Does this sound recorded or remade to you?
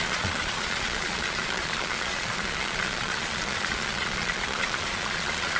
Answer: remade